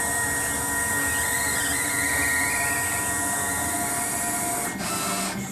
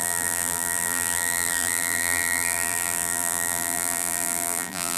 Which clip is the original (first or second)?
first